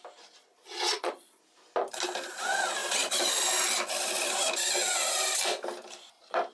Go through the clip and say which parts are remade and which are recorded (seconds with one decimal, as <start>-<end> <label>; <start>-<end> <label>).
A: 0.0-0.4 recorded; 0.4-1.4 remade; 1.4-6.5 recorded